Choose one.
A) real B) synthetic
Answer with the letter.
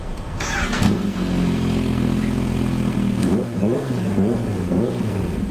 B